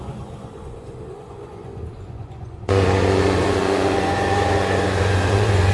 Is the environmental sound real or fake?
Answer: fake